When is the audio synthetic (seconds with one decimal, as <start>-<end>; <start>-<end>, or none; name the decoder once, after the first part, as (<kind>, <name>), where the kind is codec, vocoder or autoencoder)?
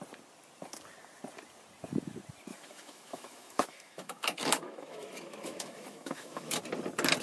2.5-6.6 (autoencoder, DAC-VAE)